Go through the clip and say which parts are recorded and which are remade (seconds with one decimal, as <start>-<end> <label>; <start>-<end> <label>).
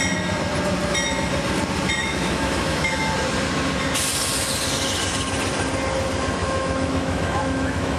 0.0-2.0 recorded; 2.0-3.1 remade; 3.1-6.4 recorded; 6.4-8.0 remade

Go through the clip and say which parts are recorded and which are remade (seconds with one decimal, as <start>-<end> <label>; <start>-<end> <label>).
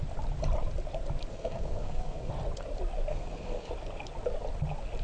0.0-1.3 recorded; 1.3-2.3 remade; 2.3-3.1 recorded; 3.1-3.7 remade; 3.7-5.0 recorded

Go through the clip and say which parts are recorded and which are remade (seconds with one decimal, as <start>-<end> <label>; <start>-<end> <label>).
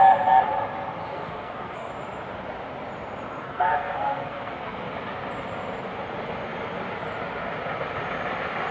0.0-1.1 recorded; 1.1-1.9 remade; 1.9-3.4 recorded; 3.4-4.8 remade; 4.8-8.7 recorded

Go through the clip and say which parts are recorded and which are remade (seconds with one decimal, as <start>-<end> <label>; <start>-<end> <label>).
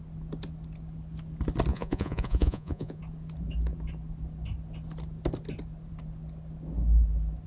0.0-1.7 recorded; 1.7-3.0 remade; 3.0-7.5 recorded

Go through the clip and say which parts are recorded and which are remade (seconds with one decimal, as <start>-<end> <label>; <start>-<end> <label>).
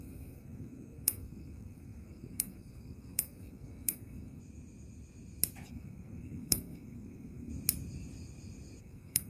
0.0-4.4 remade; 4.4-5.7 recorded; 5.7-7.5 remade; 7.5-8.8 recorded; 8.8-9.3 remade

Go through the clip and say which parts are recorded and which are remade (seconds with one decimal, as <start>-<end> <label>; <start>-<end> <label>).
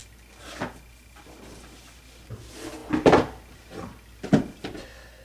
0.0-5.2 recorded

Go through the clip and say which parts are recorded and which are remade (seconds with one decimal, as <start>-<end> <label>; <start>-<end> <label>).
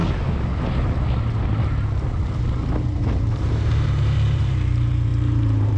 0.0-3.5 recorded; 3.5-5.8 remade